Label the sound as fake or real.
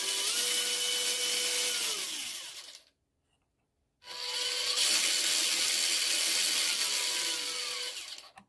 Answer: real